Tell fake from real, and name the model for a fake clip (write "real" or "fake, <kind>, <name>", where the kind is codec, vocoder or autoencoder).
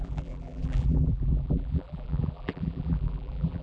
fake, vocoder, BigVGAN v2